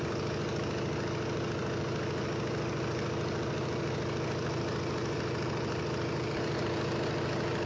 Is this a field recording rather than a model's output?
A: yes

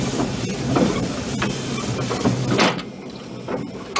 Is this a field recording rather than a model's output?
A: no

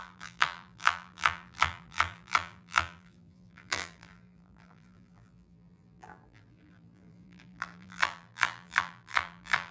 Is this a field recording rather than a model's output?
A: no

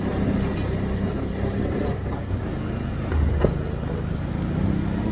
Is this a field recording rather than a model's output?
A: yes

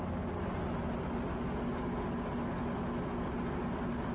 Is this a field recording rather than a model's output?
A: yes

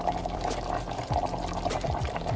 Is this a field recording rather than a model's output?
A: yes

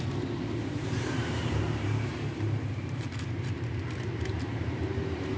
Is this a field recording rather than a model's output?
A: no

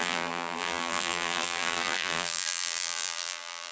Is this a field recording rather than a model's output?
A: no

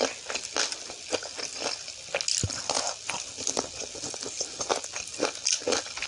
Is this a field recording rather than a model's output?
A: yes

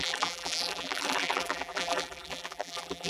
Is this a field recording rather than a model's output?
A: no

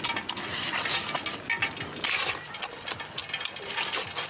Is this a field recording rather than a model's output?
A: yes